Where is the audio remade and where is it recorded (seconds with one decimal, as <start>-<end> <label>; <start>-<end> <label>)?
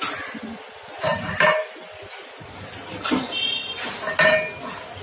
0.0-5.0 recorded